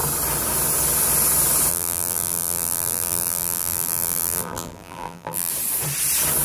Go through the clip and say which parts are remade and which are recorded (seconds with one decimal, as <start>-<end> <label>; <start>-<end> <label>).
0.0-1.7 recorded; 1.7-5.5 remade; 5.5-6.4 recorded